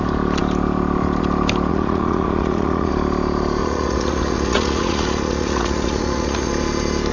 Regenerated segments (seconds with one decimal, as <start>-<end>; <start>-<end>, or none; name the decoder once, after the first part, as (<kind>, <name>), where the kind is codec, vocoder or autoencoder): 1.7-2.9 (vocoder, Vocos); 3.6-6.5